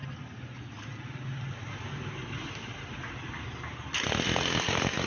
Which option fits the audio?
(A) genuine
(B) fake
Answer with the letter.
A